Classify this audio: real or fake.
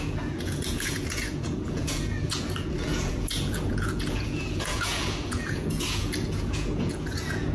fake